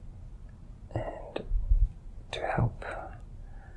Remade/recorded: recorded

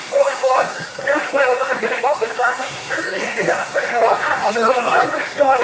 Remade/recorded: remade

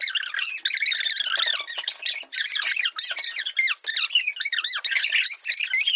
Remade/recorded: recorded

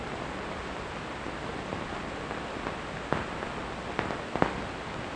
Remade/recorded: recorded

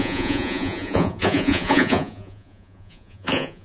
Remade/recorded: remade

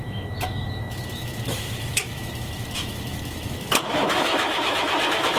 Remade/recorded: remade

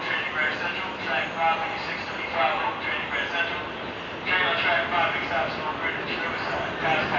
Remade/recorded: recorded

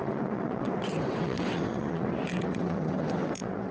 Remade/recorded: remade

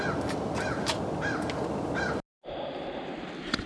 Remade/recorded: recorded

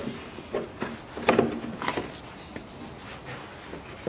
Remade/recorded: recorded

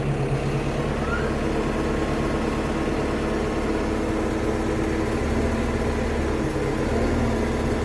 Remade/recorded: recorded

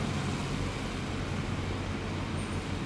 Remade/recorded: recorded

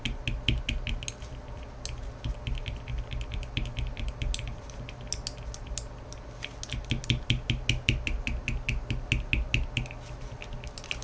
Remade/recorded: recorded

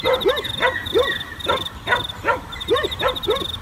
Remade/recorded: remade